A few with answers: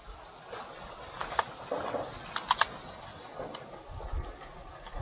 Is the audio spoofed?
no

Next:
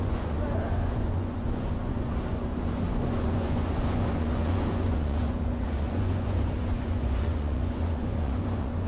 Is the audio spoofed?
yes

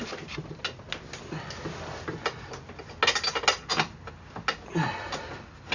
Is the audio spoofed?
no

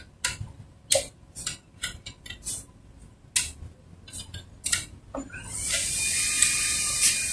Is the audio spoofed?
no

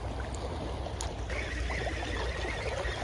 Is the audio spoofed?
no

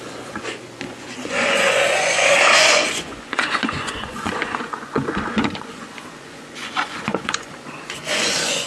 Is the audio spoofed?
yes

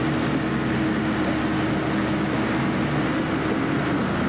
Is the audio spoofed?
no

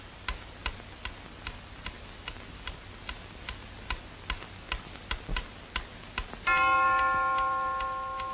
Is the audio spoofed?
no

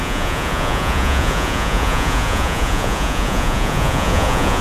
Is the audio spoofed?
yes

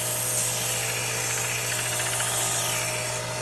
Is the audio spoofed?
no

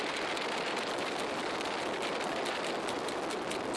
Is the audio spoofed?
no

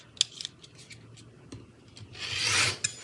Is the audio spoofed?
no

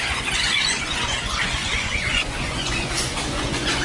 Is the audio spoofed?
yes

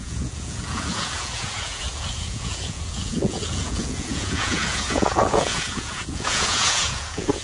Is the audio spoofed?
yes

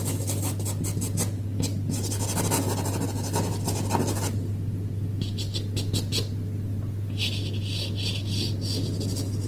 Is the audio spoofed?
no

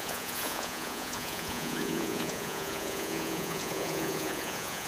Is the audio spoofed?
yes